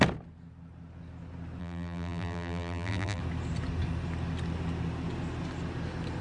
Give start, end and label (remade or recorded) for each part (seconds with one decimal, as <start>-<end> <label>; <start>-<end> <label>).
0.0-1.6 recorded; 1.6-3.2 remade; 3.2-6.2 recorded